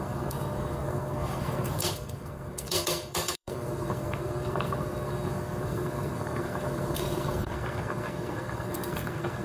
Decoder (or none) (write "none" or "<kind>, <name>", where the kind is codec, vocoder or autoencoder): codec, SNAC